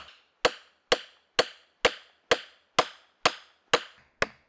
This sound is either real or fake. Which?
real